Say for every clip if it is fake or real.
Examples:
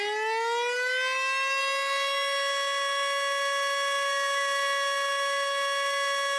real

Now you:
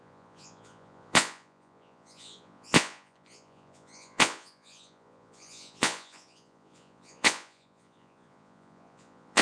fake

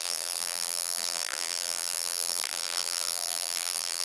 fake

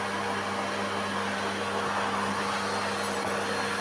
real